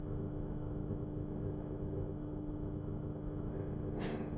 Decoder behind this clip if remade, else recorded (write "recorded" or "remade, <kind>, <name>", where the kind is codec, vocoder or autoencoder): remade, autoencoder, DAC-VAE